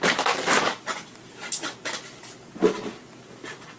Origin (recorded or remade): recorded